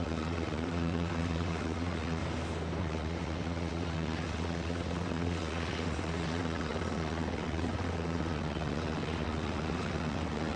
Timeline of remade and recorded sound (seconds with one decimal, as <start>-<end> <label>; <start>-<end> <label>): 0.0-2.2 remade; 2.2-2.8 recorded; 2.8-10.6 remade